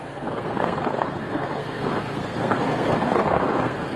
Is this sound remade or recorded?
remade